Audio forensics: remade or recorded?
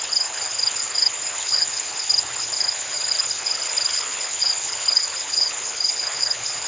remade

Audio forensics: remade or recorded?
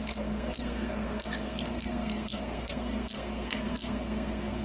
remade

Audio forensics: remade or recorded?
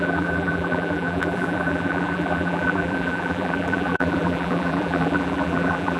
remade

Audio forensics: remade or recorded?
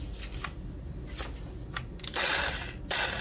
recorded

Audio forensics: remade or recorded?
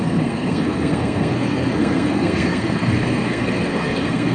remade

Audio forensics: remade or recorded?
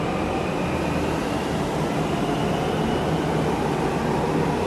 recorded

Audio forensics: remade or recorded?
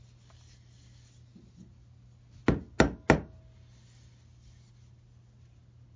recorded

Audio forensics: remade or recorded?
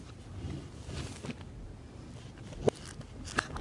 recorded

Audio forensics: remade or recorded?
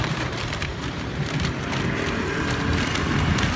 recorded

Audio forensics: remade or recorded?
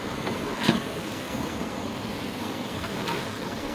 remade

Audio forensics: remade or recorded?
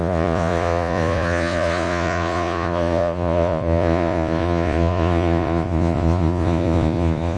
remade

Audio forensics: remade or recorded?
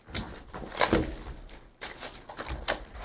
remade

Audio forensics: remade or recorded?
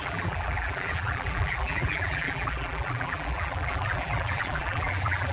remade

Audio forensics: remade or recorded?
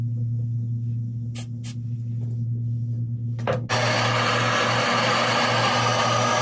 recorded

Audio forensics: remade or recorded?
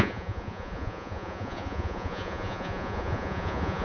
remade